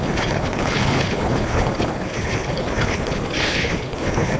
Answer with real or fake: fake